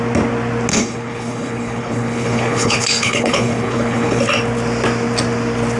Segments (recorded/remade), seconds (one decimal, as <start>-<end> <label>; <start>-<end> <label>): 0.0-0.7 recorded; 0.7-4.2 remade; 4.2-5.8 recorded